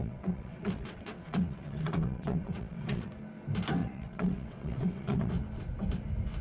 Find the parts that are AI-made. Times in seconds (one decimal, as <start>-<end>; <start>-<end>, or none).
0.0-3.1; 3.8-5.3